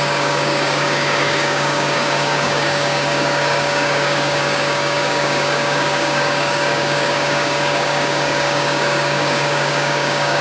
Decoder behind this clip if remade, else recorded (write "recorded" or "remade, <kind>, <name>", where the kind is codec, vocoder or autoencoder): remade, codec, DAC